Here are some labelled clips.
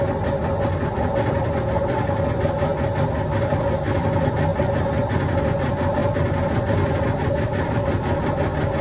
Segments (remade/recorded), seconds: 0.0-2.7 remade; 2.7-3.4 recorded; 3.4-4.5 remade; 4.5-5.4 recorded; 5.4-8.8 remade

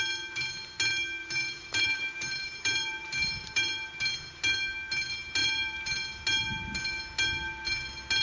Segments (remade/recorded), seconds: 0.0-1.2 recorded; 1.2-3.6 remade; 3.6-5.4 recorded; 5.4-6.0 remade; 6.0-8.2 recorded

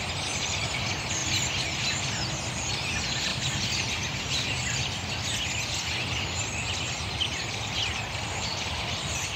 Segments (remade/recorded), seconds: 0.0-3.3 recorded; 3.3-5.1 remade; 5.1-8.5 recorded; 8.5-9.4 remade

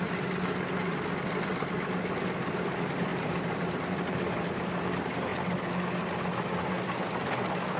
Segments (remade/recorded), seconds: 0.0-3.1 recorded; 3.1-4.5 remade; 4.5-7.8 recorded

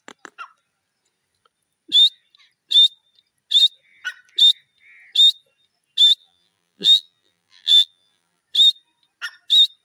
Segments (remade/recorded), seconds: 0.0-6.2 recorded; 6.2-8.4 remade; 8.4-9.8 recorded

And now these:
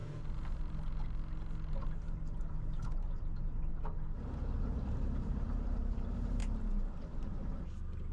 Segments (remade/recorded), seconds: 0.0-2.5 recorded; 2.5-3.7 remade; 3.7-4.6 recorded; 4.6-6.4 remade; 6.4-8.1 recorded

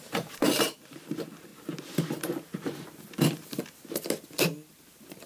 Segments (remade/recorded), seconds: 0.0-1.5 remade; 1.5-4.7 recorded; 4.7-5.3 remade